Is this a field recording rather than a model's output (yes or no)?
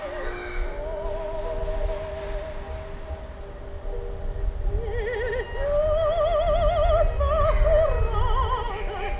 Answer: yes